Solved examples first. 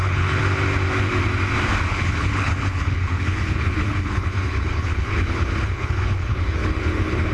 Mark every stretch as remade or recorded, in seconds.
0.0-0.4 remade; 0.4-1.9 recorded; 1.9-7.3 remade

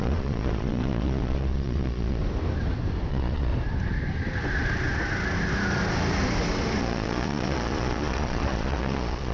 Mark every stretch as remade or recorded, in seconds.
0.0-2.2 remade; 2.2-3.1 recorded; 3.1-3.5 remade; 3.5-6.8 recorded; 6.8-9.3 remade

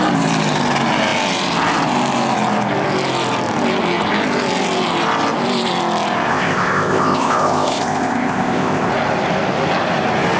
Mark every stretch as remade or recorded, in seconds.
0.0-6.3 recorded; 6.3-8.9 remade; 8.9-10.4 recorded